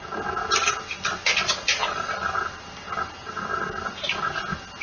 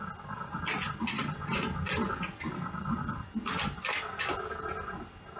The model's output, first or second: second